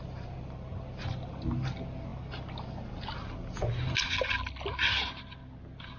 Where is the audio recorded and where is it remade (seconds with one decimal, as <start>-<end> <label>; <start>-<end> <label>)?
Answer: 0.0-6.0 recorded

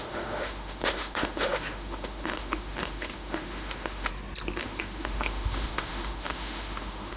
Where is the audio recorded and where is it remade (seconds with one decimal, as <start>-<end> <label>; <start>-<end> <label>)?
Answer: 0.0-4.1 remade; 4.1-4.6 recorded; 4.6-7.2 remade